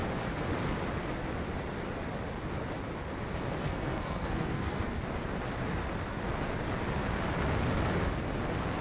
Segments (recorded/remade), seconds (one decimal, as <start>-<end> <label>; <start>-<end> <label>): 0.0-3.6 recorded; 3.6-5.0 remade; 5.0-8.8 recorded